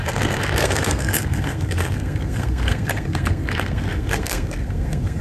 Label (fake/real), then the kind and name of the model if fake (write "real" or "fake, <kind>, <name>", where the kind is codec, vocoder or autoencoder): fake, codec, SNAC